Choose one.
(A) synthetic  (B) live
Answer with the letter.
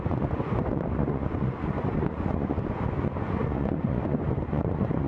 A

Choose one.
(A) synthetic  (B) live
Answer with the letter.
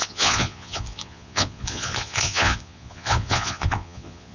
A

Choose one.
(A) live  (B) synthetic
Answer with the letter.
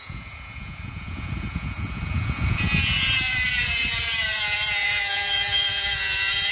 B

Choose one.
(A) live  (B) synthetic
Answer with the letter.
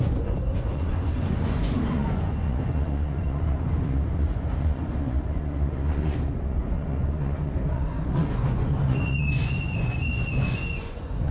B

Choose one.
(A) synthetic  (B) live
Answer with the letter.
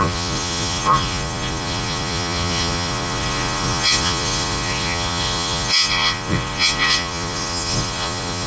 A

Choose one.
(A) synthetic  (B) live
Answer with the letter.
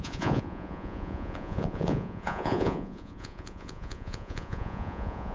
A